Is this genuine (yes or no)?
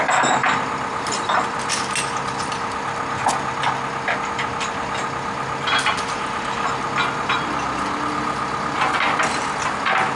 yes